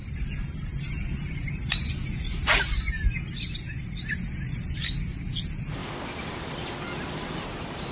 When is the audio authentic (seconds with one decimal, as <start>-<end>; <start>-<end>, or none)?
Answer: 0.0-7.9